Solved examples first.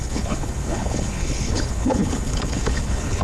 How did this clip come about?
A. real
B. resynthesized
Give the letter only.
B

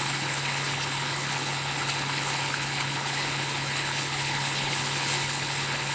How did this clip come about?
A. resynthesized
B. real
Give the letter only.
A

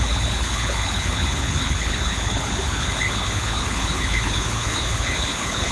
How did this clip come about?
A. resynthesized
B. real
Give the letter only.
A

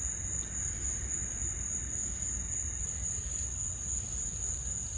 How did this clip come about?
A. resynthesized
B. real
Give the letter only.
B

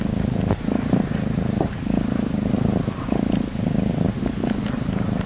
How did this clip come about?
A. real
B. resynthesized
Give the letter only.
A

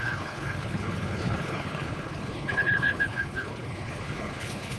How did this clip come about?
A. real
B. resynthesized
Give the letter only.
B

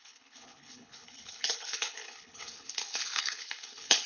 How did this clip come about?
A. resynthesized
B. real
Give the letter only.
A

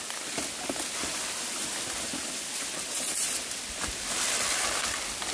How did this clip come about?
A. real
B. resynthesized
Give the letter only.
A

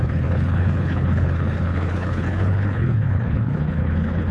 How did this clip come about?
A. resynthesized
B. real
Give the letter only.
A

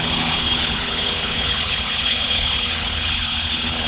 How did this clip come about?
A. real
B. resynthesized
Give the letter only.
B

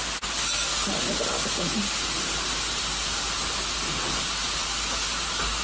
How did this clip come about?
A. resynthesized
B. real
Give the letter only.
B